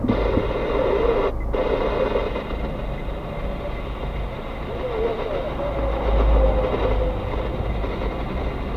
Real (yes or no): yes